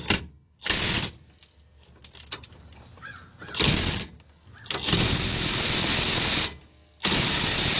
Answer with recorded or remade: recorded